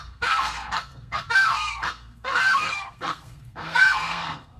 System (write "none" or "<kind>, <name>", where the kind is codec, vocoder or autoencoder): codec, SNAC